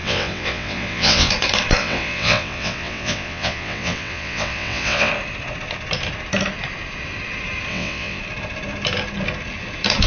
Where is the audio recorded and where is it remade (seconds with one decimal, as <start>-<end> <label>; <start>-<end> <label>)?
0.0-1.3 remade; 1.3-1.8 recorded; 1.8-5.1 remade; 5.1-7.7 recorded; 7.7-8.2 remade; 8.2-10.1 recorded